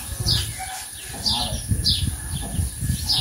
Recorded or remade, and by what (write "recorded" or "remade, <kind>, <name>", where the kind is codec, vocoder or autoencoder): recorded